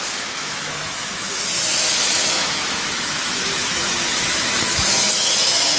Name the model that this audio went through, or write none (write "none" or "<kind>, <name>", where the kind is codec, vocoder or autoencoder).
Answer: autoencoder, DAC-VAE